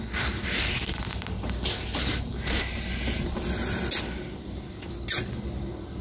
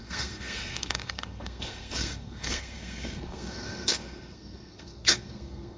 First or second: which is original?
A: first